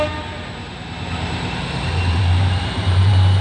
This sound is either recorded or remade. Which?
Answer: remade